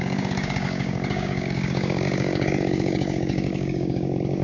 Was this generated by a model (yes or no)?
yes